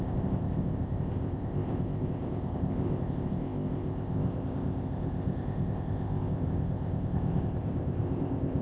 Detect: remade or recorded remade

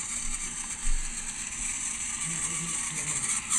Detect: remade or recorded recorded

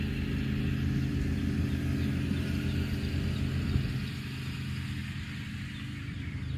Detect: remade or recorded recorded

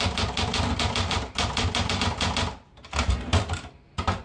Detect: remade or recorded recorded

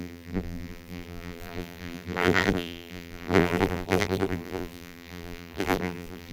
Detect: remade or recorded remade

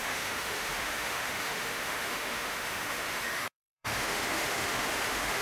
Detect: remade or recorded remade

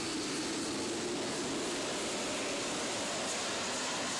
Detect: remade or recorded recorded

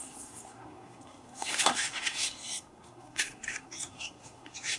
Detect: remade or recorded remade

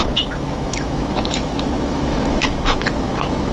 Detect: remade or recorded remade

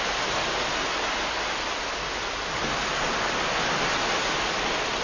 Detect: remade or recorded recorded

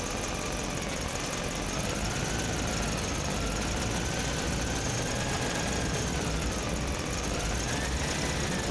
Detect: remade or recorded recorded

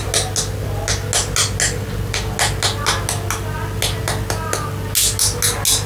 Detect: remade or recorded recorded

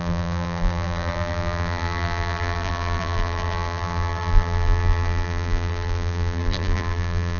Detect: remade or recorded remade